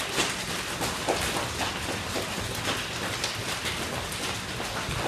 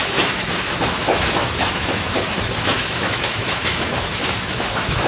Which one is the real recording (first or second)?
first